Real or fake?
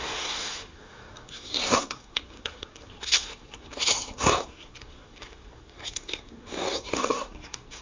fake